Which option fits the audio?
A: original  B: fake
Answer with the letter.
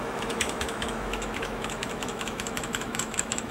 B